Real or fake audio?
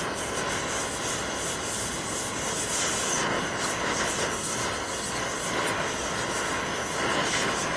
real